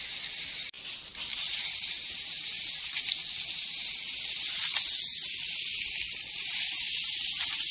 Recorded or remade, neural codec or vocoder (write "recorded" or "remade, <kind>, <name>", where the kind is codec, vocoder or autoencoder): recorded